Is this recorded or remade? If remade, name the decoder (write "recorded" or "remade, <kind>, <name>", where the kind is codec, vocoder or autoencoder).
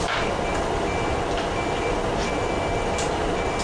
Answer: recorded